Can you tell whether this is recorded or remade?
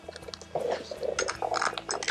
recorded